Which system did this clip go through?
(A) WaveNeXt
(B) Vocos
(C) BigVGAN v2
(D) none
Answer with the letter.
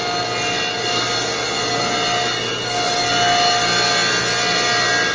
D